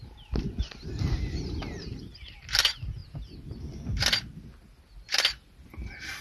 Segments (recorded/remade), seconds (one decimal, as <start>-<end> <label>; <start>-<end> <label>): 0.0-6.2 recorded